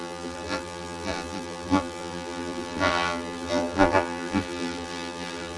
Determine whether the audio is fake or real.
fake